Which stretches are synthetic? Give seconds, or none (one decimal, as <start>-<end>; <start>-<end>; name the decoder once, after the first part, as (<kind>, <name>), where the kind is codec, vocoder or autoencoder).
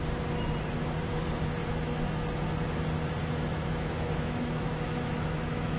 3.2-5.8 (autoencoder, DAC-VAE)